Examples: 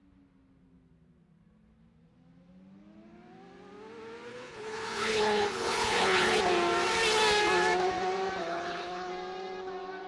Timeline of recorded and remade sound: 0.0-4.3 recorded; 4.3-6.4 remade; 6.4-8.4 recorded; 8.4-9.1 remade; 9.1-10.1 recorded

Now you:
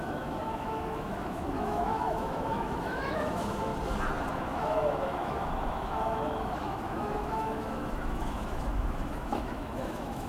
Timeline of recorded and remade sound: 0.0-3.7 remade; 3.7-4.3 recorded; 4.3-10.3 remade

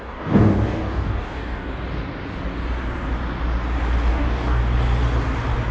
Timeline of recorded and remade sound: 0.0-1.7 remade; 1.7-4.1 recorded; 4.1-4.6 remade; 4.6-5.7 recorded

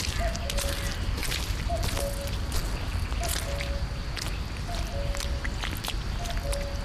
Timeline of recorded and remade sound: 0.0-1.2 recorded; 1.2-1.7 remade; 1.7-6.8 recorded